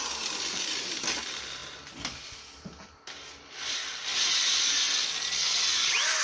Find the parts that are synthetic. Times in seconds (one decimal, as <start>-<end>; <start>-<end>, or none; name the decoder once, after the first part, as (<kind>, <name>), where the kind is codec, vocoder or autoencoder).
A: 0.0-1.6 (vocoder, BigVGAN v2); 2.2-4.1